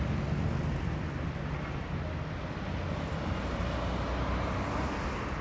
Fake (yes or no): no